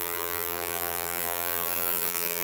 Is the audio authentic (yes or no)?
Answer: no